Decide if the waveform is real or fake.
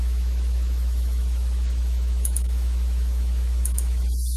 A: fake